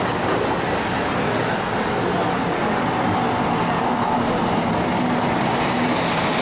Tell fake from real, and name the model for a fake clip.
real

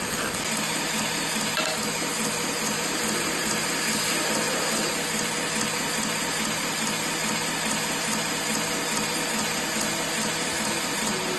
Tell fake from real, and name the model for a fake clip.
real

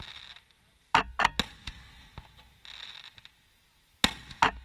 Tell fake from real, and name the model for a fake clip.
real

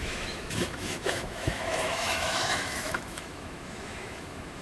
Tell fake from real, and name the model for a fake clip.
fake, autoencoder, DAC-VAE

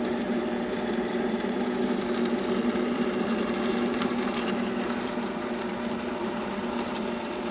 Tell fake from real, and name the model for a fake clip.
fake, vocoder, BigVGAN v2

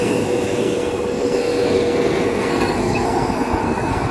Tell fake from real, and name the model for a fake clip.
fake, codec, SNAC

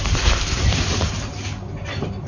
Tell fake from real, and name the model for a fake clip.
real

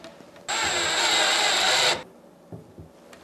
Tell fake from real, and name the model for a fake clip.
real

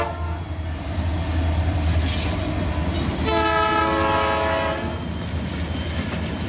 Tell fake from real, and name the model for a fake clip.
real